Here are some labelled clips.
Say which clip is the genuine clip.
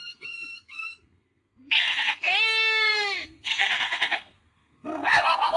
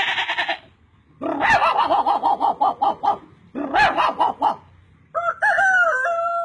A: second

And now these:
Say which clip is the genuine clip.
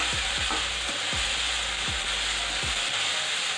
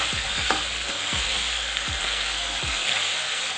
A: first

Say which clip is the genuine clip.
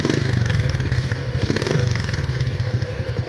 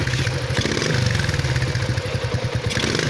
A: second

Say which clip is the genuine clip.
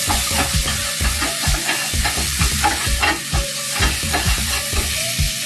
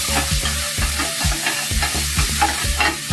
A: second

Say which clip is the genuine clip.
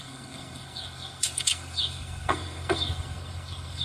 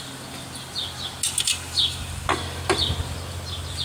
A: second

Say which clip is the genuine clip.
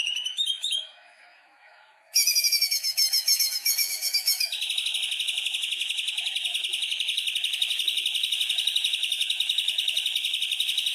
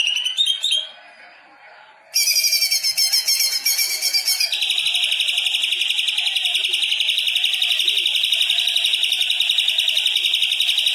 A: second